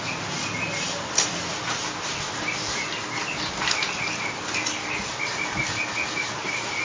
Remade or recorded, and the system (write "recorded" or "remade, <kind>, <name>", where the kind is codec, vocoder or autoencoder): recorded